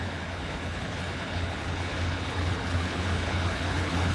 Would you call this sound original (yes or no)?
no